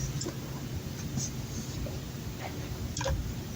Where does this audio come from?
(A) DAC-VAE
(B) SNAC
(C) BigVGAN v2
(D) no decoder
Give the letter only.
D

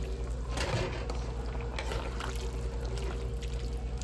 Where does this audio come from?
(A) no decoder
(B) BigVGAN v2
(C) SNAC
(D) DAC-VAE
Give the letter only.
A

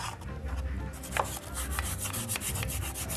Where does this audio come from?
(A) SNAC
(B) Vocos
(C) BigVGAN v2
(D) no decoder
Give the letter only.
D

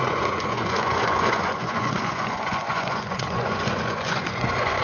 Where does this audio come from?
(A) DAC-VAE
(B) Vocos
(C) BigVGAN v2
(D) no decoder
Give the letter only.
B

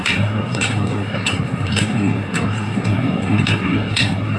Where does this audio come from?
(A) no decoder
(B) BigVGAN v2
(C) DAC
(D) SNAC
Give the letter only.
D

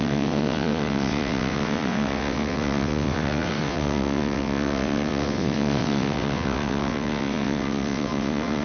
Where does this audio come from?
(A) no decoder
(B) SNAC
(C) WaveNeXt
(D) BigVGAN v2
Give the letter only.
C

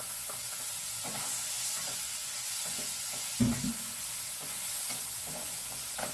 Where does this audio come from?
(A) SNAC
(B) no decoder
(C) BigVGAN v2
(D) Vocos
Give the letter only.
D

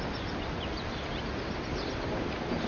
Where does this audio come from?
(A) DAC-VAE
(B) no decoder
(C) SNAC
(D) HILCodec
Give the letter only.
B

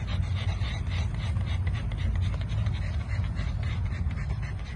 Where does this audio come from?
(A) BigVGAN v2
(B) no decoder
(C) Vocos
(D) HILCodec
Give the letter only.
B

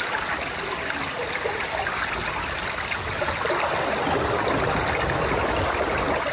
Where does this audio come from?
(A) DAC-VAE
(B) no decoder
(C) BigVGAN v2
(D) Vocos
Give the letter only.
B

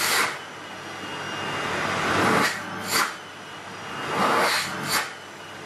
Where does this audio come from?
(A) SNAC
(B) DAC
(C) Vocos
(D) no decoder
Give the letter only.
D